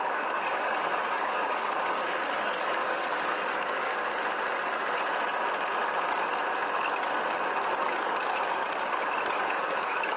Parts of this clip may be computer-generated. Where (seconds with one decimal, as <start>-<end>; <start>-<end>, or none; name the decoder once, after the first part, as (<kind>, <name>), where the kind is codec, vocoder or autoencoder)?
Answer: 0.0-3.9 (codec, DAC); 7.8-8.6; 9.4-10.2